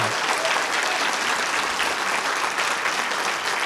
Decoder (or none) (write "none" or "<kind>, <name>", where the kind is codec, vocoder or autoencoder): none